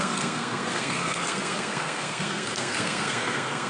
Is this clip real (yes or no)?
no